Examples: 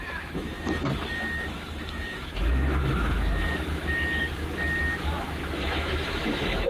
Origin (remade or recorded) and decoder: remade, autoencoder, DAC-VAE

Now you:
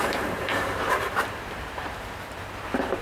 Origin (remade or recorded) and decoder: remade, vocoder, BigVGAN v2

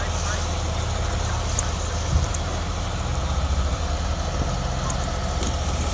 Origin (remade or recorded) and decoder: recorded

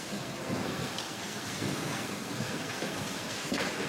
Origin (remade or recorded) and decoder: remade, codec, SNAC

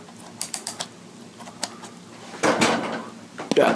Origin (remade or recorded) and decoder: recorded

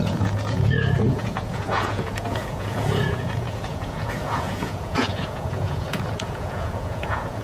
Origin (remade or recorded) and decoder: remade, vocoder, Vocos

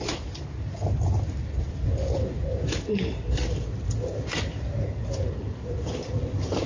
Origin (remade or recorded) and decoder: recorded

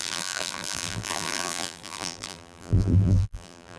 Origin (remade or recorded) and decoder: remade, vocoder, BigVGAN v2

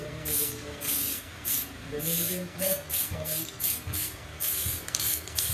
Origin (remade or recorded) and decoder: remade, codec, SNAC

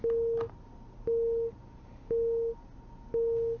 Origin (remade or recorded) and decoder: recorded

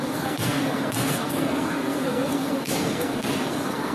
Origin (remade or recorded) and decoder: remade, codec, SNAC